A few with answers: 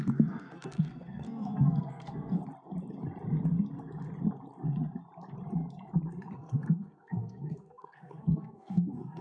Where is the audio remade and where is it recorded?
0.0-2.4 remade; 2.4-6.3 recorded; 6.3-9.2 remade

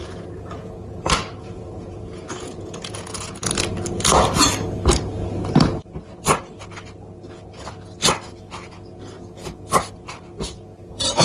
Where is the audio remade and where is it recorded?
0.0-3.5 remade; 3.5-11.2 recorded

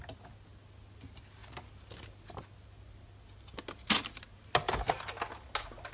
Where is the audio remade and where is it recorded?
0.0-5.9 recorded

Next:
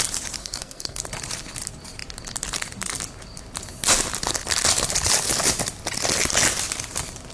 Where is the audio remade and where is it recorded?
0.0-0.4 recorded; 0.4-1.0 remade; 1.0-7.3 recorded